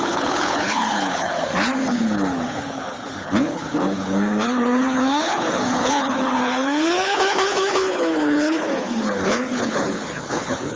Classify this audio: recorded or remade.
remade